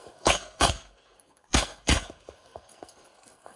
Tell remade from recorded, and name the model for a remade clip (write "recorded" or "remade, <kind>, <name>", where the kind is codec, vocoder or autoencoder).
remade, codec, SNAC